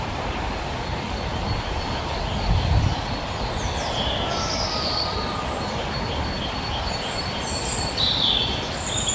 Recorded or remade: remade